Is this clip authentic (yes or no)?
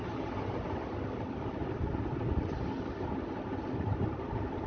yes